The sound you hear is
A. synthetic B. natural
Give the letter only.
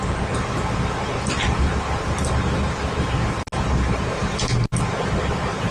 A